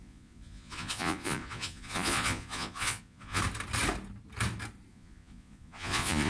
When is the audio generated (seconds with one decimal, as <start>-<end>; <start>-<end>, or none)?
0.0-3.4; 4.9-6.3